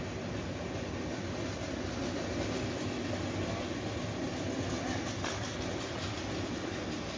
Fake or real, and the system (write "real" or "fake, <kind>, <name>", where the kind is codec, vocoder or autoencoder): real